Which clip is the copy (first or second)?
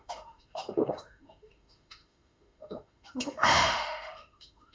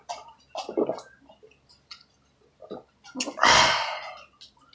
first